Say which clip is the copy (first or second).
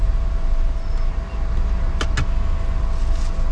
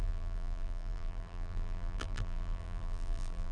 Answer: second